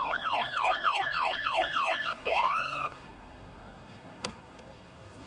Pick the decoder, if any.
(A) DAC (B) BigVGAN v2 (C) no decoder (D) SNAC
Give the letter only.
D